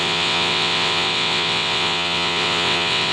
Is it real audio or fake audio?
fake